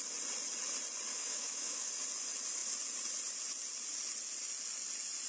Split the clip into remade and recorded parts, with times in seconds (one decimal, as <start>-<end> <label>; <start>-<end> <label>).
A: 0.0-1.1 recorded; 1.1-1.9 remade; 1.9-5.3 recorded